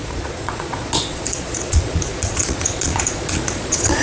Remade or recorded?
remade